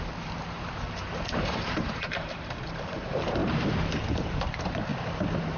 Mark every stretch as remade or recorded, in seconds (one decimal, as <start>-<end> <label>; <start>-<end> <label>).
0.0-3.4 remade; 3.4-4.3 recorded; 4.3-4.9 remade; 4.9-5.6 recorded